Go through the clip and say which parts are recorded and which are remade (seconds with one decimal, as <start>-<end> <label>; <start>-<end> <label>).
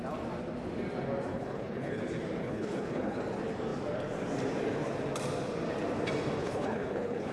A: 0.0-1.3 recorded; 1.3-2.0 remade; 2.0-2.4 recorded; 2.4-3.2 remade; 3.2-6.4 recorded; 6.4-7.3 remade